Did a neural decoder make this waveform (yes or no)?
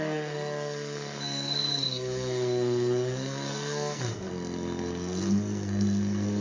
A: yes